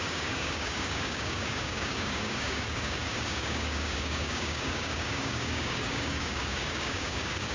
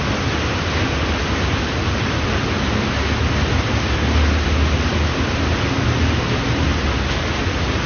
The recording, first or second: second